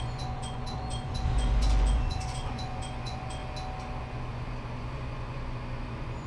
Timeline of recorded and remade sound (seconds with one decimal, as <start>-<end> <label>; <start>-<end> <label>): 0.0-3.4 remade; 3.4-4.0 recorded; 4.0-6.3 remade